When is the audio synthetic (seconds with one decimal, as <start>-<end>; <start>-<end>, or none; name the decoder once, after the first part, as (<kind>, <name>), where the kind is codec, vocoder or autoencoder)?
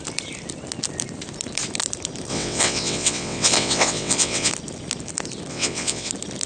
2.3-4.5 (vocoder, WaveNeXt); 5.5-6.1